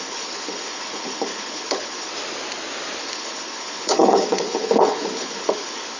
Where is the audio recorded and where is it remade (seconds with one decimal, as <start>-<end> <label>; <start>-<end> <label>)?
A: 0.0-2.1 remade; 2.1-3.0 recorded; 3.0-6.0 remade